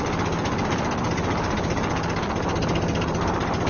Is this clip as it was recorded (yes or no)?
yes